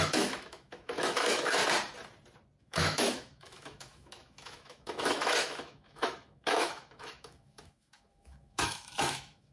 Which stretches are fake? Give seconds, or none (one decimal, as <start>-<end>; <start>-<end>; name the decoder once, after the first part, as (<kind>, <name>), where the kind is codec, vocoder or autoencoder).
0.0-1.6 (autoencoder, DAC-VAE); 2.6-9.5

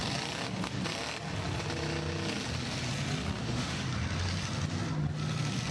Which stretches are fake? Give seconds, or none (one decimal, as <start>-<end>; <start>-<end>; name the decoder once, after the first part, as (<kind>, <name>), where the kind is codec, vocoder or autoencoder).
3.4-3.9 (autoencoder, DAC-VAE)

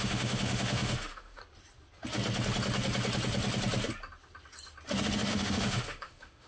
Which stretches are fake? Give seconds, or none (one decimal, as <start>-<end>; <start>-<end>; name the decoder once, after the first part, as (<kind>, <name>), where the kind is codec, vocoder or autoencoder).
0.0-1.4 (autoencoder, DAC-VAE); 5.3-6.5

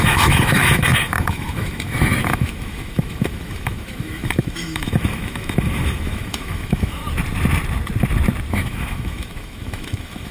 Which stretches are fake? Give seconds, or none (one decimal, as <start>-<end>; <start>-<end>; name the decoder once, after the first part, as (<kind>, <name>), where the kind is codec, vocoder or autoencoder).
0.0-7.0 (autoencoder, DAC-VAE); 8.5-10.3